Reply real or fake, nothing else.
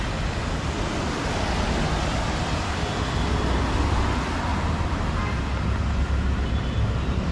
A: real